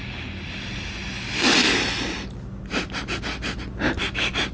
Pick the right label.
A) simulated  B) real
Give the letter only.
B